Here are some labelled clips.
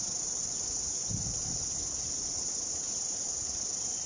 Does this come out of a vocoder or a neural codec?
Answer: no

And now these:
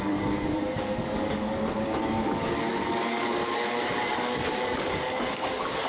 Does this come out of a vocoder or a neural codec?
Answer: yes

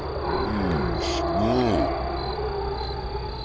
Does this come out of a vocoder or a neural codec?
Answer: no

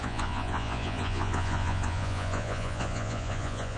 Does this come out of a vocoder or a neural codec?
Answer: yes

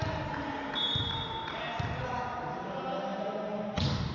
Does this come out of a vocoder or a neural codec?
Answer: no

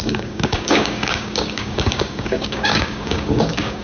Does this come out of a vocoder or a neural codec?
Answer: yes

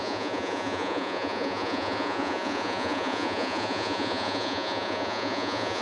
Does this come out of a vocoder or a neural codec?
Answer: yes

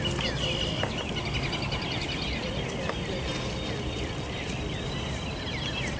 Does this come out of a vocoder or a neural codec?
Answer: no